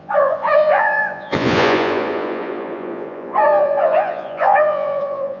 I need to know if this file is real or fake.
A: fake